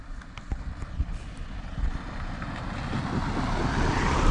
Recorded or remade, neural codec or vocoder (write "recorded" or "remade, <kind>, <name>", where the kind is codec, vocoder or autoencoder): recorded